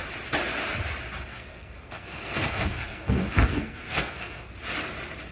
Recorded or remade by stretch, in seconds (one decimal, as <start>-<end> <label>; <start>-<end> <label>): 0.0-1.3 recorded; 1.3-4.5 remade; 4.5-5.3 recorded